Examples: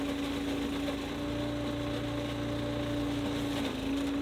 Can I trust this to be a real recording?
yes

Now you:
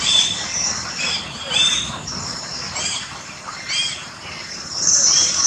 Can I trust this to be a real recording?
no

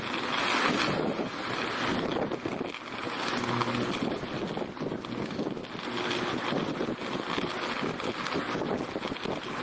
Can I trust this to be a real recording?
yes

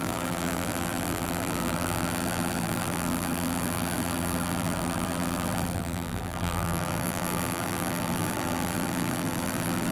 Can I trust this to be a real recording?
no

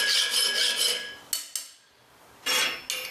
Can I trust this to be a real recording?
yes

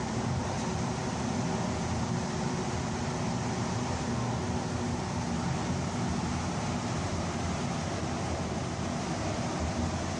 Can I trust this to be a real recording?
yes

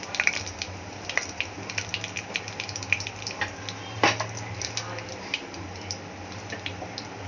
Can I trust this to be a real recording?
no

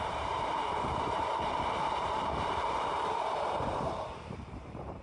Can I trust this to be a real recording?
no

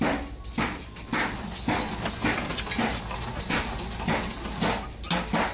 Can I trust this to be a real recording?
yes